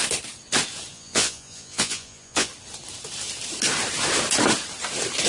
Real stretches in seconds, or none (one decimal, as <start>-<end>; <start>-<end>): 0.0-0.9; 2.5-5.3